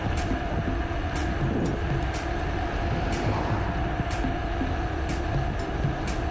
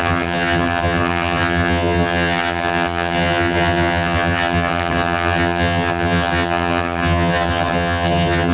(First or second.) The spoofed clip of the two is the second